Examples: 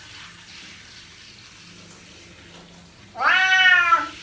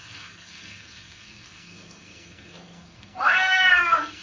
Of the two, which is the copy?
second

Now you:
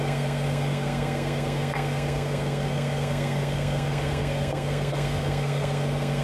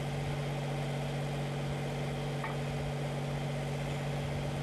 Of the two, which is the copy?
first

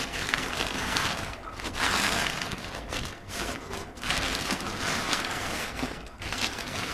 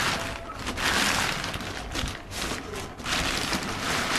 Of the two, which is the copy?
first